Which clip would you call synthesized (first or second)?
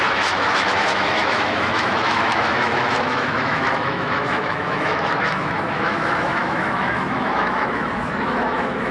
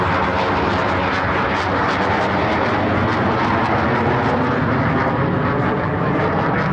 first